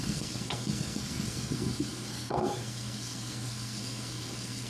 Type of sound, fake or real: fake